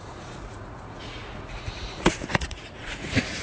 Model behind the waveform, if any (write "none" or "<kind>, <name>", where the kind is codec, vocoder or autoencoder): vocoder, Vocos